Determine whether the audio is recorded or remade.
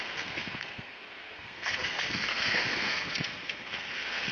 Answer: remade